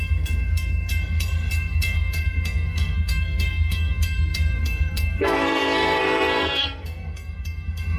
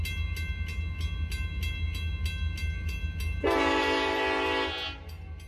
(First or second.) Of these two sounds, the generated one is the first